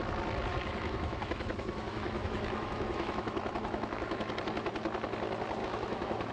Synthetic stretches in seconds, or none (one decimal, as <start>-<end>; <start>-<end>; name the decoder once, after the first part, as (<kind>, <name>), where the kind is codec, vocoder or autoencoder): 0.5-4.3 (autoencoder, DAC-VAE); 5.6-6.3